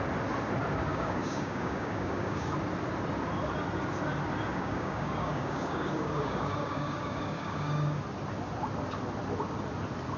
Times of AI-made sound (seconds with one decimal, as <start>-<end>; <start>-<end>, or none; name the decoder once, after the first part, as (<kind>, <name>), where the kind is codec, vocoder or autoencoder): 0.9-2.5 (codec, DAC); 4.5-8.0